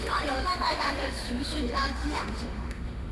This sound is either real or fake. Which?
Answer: fake